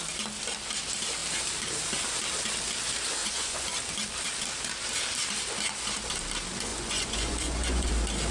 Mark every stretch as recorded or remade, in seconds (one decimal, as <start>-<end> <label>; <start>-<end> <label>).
0.0-3.2 recorded; 3.2-3.7 remade; 3.7-6.7 recorded; 6.7-7.9 remade; 7.9-8.3 recorded